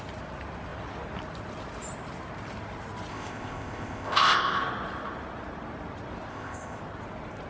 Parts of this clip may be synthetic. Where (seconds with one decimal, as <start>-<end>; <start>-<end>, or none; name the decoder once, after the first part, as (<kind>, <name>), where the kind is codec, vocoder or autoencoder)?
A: 3.1-4.6 (codec, ZipCodec); 6.3-6.8